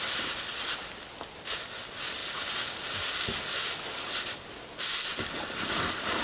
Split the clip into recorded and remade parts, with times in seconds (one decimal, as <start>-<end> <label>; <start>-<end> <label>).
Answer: 0.0-6.2 recorded